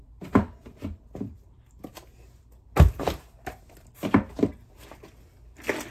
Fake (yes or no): no